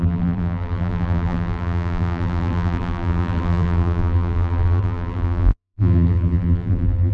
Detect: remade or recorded remade